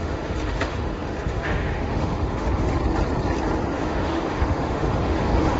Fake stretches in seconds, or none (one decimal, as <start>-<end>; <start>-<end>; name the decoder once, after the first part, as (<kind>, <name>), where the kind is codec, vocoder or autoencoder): 0.0-2.8 (autoencoder, DAC-VAE); 3.7-5.6